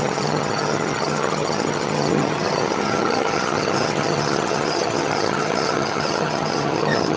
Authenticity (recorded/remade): remade